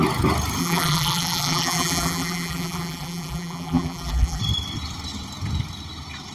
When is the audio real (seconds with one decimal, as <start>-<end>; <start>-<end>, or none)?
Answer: 0.0-0.6; 4.4-6.3